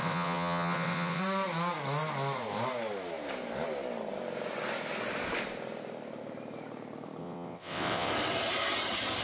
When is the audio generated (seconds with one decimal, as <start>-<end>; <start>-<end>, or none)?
0.0-1.2; 7.2-8.1